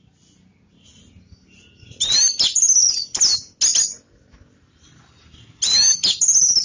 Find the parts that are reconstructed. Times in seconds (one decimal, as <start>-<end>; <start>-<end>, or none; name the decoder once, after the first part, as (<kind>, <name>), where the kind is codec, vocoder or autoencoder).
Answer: none